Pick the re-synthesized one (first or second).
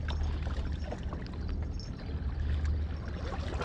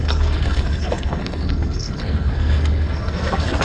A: second